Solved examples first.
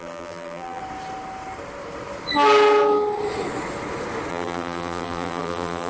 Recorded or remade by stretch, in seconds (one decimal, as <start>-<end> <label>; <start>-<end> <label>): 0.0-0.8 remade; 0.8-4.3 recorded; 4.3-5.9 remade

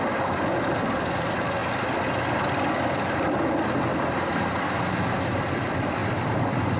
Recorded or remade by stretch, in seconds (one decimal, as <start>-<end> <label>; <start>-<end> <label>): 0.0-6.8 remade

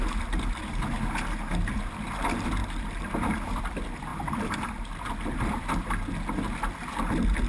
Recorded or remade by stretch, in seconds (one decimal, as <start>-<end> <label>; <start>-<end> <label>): 0.0-2.6 recorded; 2.6-3.6 remade; 3.6-4.1 recorded; 4.1-4.7 remade; 4.7-7.5 recorded

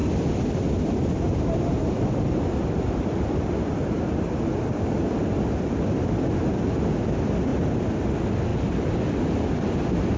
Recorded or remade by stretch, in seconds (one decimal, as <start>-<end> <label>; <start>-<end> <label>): 0.0-5.0 remade; 5.0-8.5 recorded; 8.5-9.2 remade; 9.2-10.2 recorded

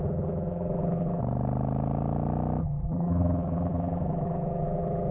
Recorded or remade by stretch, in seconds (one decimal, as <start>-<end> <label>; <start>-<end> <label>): 0.0-1.2 remade; 1.2-2.6 recorded; 2.6-5.1 remade